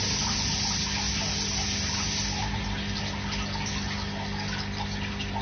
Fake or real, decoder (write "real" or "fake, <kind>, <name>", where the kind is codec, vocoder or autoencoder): real